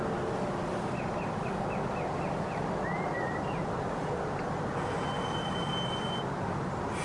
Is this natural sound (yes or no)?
yes